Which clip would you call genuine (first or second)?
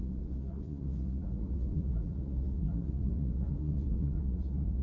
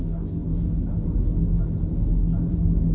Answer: second